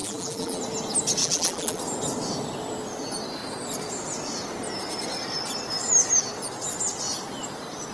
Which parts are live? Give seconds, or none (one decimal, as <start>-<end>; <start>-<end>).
0.6-1.2; 1.8-7.9